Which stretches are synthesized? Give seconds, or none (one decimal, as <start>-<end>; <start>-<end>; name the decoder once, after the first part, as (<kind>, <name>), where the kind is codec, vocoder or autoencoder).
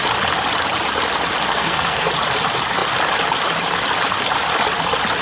1.5-2.1 (codec, SNAC)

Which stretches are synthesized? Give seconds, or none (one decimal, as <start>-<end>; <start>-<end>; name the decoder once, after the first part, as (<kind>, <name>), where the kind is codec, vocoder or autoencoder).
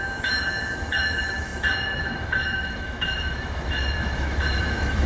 0.0-5.1 (autoencoder, DAC-VAE)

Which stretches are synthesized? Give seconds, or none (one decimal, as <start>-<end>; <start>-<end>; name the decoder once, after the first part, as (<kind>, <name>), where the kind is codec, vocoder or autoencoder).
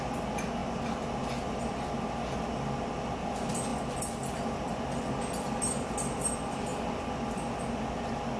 none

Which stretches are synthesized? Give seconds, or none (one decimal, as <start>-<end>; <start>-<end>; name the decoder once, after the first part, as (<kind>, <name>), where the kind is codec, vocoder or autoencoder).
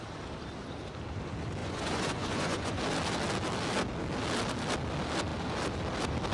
1.6-2.8 (vocoder, Vocos)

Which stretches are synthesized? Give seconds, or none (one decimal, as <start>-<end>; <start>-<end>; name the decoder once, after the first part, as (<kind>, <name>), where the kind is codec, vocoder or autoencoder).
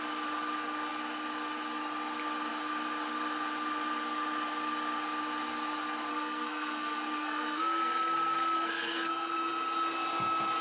6.1-9.1 (codec, SNAC)